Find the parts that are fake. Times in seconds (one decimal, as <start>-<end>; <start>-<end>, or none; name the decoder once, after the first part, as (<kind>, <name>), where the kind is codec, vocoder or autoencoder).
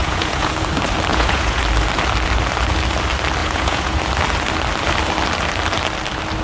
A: 0.0-0.5 (vocoder, Vocos); 1.1-1.6; 3.4-4.0